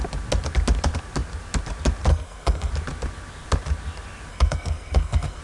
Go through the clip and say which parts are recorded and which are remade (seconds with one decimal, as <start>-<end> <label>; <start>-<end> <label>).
0.0-2.1 recorded; 2.1-2.7 remade; 2.7-4.3 recorded; 4.3-5.4 remade